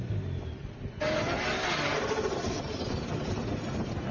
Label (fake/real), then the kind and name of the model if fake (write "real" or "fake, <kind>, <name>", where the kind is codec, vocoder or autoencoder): real